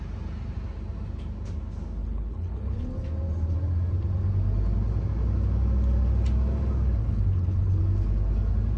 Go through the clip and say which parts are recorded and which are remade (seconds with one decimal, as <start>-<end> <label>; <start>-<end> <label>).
0.0-2.0 recorded; 2.0-2.8 remade; 2.8-7.0 recorded; 7.0-7.8 remade; 7.8-8.8 recorded